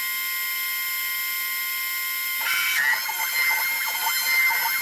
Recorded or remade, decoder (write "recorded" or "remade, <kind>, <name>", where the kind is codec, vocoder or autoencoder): recorded